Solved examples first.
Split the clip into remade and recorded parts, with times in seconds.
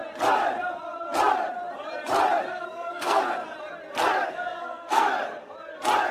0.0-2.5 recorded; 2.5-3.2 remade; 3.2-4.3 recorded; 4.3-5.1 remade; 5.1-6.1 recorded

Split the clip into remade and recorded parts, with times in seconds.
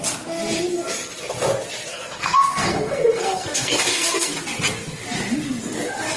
0.0-1.9 recorded; 1.9-4.4 remade; 4.4-6.2 recorded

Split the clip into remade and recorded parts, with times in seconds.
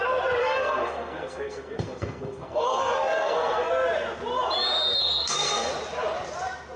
0.0-0.4 recorded; 0.4-3.7 remade; 3.7-5.0 recorded; 5.0-5.7 remade; 5.7-6.8 recorded